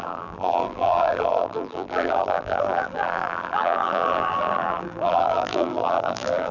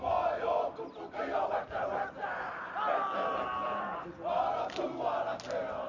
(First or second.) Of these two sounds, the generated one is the first